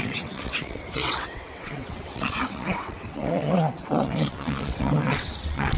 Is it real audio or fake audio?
fake